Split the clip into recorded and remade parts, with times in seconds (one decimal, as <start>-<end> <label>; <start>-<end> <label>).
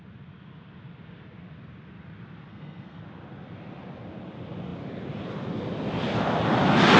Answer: 0.0-2.5 recorded; 2.5-3.0 remade; 3.0-7.0 recorded